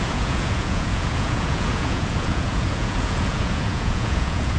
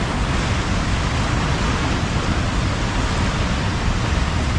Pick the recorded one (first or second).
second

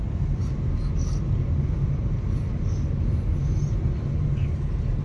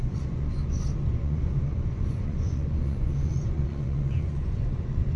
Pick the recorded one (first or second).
first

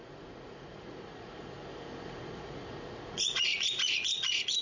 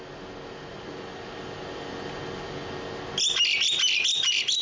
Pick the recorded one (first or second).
second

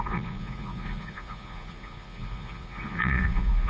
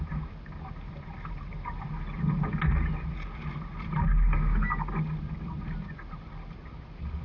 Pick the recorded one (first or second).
second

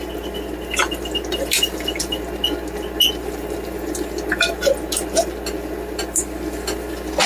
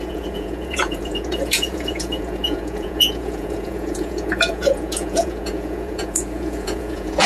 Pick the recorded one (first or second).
first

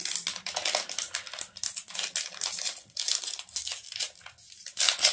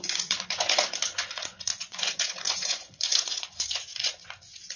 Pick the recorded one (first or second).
first